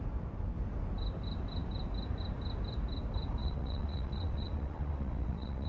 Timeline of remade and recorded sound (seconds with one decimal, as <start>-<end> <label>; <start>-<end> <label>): 0.0-3.4 recorded; 3.4-5.7 remade